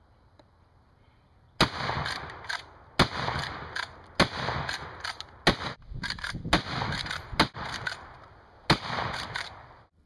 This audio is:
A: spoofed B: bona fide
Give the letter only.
B